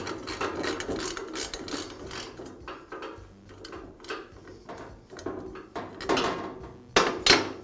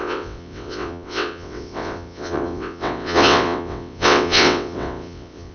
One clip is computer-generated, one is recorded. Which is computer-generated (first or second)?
second